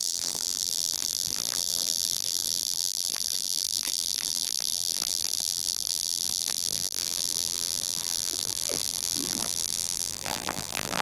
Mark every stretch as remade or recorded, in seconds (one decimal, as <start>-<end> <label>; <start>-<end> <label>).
0.0-11.0 remade

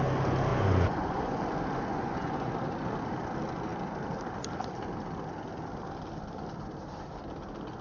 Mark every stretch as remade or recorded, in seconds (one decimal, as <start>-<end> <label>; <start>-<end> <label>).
0.0-0.5 recorded; 0.5-1.4 remade; 1.4-1.9 recorded; 1.9-2.5 remade; 2.5-7.8 recorded

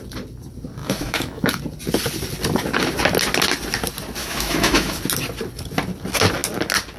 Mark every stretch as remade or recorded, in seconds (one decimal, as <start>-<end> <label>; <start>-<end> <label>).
0.0-0.8 recorded; 0.8-1.6 remade; 1.6-4.2 recorded; 4.2-5.0 remade; 5.0-7.0 recorded

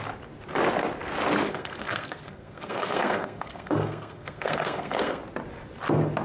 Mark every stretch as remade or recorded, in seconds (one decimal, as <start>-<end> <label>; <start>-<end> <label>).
0.0-1.5 recorded; 1.5-5.2 remade; 5.2-6.2 recorded

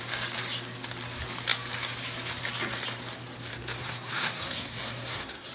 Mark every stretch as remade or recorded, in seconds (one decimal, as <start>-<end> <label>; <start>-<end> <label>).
0.0-3.5 recorded; 3.5-5.5 remade

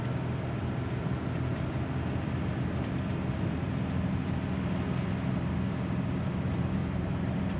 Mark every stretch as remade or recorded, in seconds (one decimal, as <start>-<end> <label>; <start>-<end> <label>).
0.0-6.8 recorded; 6.8-7.6 remade

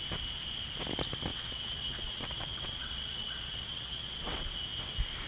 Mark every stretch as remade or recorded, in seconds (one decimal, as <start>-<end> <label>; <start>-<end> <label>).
0.0-1.3 recorded; 1.3-4.5 remade; 4.5-5.3 recorded